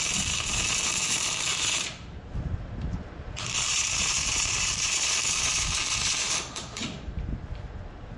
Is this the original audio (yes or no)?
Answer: no